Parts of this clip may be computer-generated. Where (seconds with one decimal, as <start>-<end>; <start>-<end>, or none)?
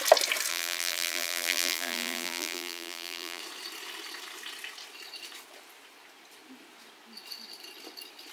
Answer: 0.5-3.4